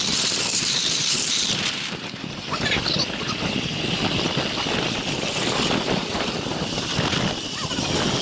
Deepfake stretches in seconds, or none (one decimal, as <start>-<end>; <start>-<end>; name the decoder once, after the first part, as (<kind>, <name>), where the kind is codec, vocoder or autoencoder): 0.5-2.8 (vocoder, BigVGAN v2); 6.1-6.9